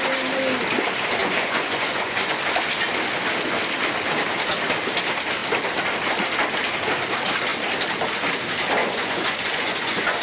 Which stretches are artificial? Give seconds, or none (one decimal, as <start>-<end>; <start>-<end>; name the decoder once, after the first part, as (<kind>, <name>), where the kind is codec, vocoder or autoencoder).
1.2-2.4 (vocoder, Vocos); 8.8-10.2